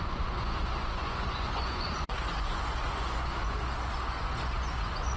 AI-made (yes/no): yes